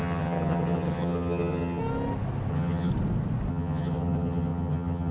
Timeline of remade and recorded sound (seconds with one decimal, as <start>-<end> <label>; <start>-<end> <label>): 0.0-1.8 remade; 1.8-2.5 recorded; 2.5-2.9 remade; 2.9-3.5 recorded; 3.5-5.1 remade